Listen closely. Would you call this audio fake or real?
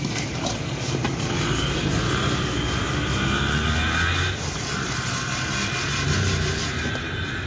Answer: fake